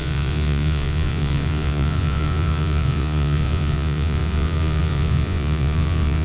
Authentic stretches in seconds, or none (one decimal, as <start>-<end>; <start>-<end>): none